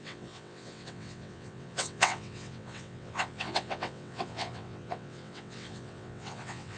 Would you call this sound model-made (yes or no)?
yes